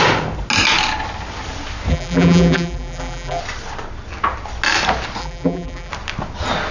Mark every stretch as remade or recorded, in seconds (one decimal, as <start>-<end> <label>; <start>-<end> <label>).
0.0-1.9 recorded; 1.9-3.4 remade; 3.4-5.2 recorded; 5.2-5.9 remade; 5.9-6.7 recorded